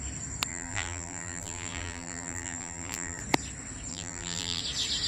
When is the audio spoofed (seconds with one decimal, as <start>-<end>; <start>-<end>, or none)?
0.5-3.2; 3.9-4.6

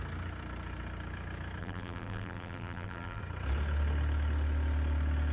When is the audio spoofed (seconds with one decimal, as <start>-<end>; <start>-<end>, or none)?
1.6-3.2

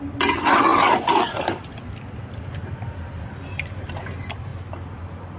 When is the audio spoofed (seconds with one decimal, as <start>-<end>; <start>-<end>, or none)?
0.7-3.9; 4.5-5.4

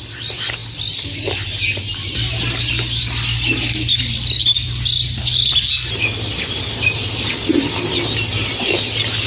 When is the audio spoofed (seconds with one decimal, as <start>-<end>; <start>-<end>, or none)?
none